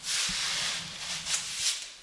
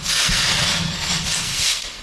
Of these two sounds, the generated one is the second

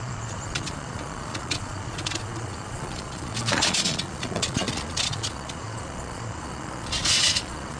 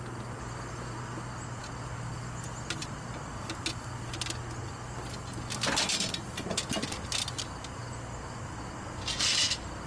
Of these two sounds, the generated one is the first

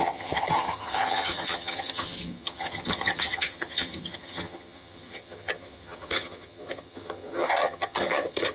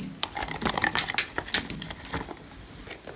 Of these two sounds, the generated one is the first